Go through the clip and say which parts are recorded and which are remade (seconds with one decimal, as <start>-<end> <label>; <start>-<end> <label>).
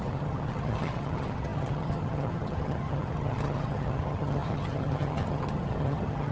0.0-6.3 remade